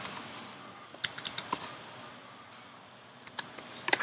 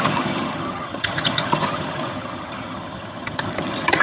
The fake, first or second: second